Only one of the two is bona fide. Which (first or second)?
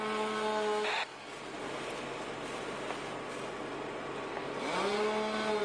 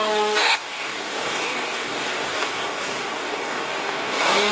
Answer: first